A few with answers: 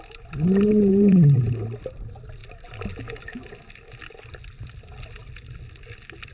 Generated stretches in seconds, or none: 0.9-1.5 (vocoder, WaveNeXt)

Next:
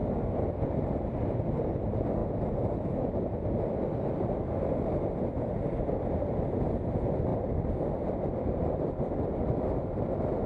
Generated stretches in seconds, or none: none